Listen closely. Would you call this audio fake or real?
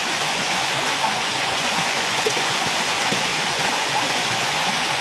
fake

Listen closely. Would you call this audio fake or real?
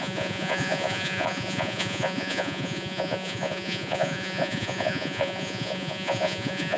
fake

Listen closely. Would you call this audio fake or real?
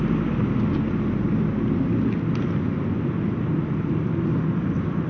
real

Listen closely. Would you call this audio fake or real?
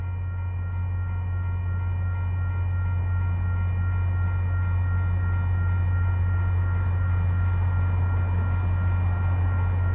real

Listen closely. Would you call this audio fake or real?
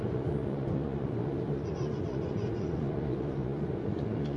fake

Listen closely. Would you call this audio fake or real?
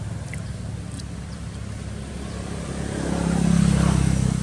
real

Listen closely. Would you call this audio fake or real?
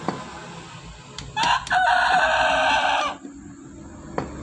real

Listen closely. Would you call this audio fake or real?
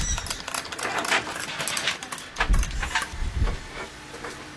real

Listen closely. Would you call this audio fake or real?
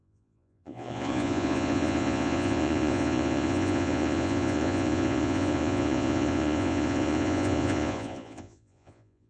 fake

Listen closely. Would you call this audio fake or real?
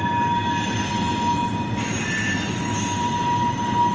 real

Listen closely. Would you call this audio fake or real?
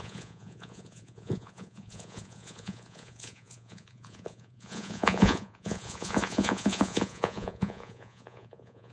fake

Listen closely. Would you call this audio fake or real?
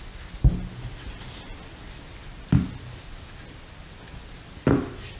real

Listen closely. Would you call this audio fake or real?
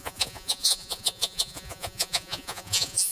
fake